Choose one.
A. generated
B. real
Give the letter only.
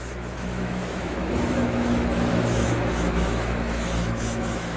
A